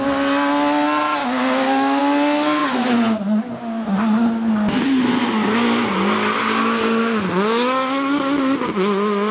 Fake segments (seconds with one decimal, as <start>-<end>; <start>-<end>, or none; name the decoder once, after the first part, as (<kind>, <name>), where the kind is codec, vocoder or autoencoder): 1.2-2.0 (codec, DAC)